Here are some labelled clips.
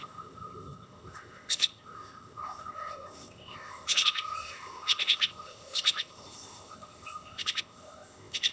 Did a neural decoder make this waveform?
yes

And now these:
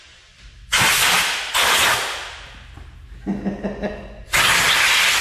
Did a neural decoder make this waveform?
no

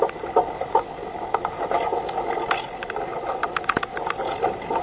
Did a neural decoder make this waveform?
no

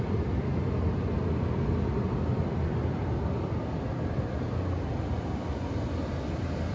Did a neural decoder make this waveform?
no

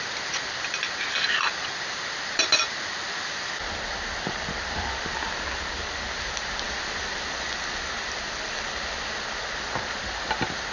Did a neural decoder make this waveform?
no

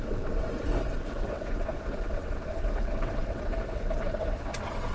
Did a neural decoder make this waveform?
yes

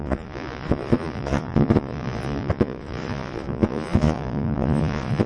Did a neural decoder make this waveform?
yes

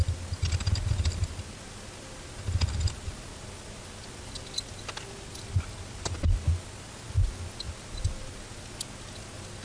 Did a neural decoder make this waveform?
no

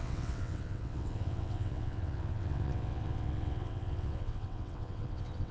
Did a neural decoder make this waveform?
yes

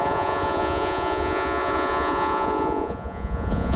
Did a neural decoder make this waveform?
yes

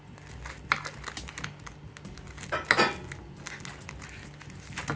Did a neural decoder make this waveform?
no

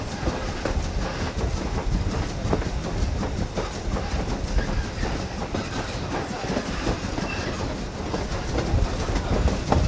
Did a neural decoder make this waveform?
no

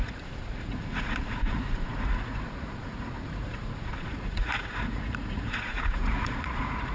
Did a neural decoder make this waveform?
yes